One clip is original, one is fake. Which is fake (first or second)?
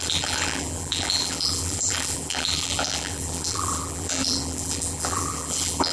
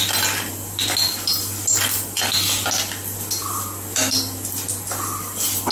first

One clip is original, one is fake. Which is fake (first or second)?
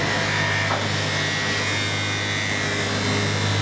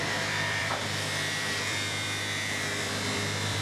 second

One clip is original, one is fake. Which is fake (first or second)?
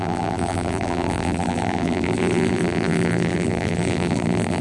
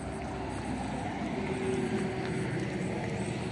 first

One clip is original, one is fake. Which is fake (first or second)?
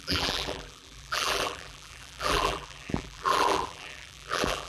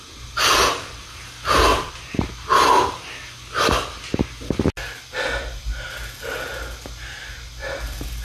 first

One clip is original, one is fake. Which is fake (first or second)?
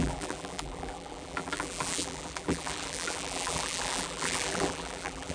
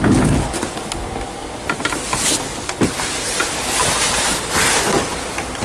first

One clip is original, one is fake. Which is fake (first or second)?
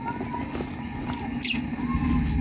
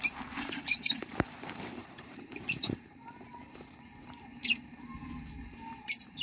second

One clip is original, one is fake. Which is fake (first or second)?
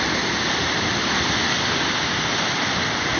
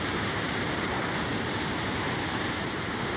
second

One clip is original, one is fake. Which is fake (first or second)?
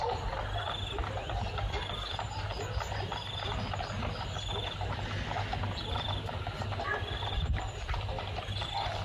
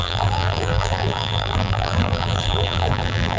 second